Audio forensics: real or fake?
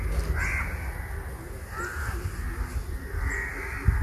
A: real